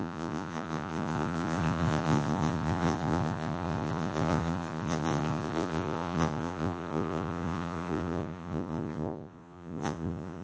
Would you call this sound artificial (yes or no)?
yes